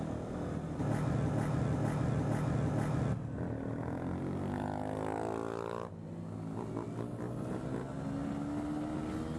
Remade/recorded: recorded